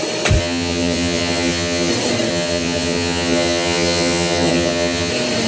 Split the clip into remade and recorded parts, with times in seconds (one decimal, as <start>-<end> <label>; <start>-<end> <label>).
0.0-0.4 recorded; 0.4-1.9 remade; 1.9-2.3 recorded; 2.3-5.1 remade; 5.1-5.5 recorded